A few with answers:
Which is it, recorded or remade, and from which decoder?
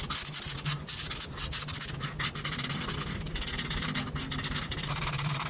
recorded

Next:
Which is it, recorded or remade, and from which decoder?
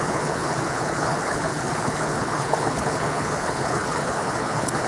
remade, codec, HILCodec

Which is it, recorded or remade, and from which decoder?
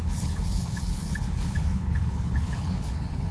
remade, codec, HILCodec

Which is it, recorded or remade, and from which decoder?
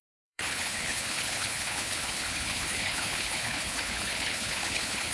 remade, codec, HILCodec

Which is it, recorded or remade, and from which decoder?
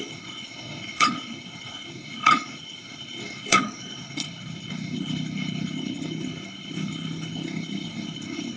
remade, codec, HILCodec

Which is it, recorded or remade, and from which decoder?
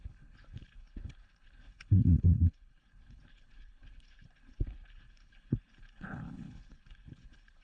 remade, codec, HILCodec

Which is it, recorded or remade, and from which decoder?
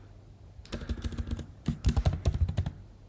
recorded